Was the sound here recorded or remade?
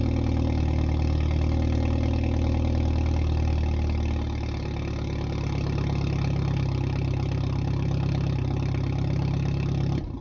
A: recorded